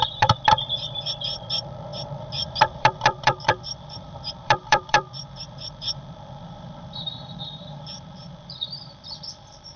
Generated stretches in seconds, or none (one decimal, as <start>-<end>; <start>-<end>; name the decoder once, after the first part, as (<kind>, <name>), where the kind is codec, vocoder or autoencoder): 0.0-9.8 (vocoder, BigVGAN v2)